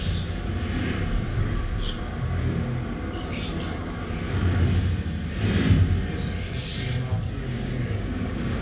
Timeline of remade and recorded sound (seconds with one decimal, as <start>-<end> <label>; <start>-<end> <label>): 0.0-1.3 recorded; 1.3-2.2 remade; 2.2-7.5 recorded; 7.5-8.6 remade